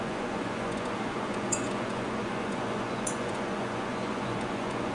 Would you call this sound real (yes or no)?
no